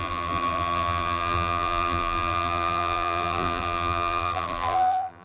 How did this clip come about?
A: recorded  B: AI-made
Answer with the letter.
B